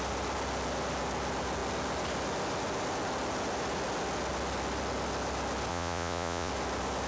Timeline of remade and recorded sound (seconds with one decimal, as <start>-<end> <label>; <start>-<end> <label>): 0.0-5.7 recorded; 5.7-6.5 remade; 6.5-7.1 recorded